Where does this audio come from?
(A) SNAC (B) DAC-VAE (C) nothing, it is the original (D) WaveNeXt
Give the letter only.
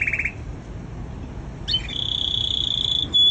C